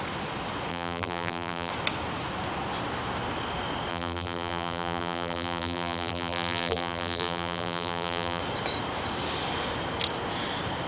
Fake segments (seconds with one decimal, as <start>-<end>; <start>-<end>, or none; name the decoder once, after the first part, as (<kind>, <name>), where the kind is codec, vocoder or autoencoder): 0.7-1.7 (vocoder, BigVGAN v2); 3.9-8.4